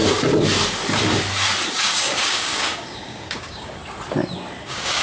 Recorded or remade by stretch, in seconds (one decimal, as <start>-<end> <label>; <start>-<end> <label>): 0.0-1.7 recorded; 1.7-3.8 remade; 3.8-4.6 recorded; 4.6-5.0 remade